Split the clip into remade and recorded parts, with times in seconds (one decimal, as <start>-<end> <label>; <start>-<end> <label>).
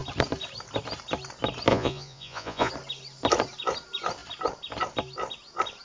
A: 0.0-1.7 recorded; 1.7-2.7 remade; 2.7-5.8 recorded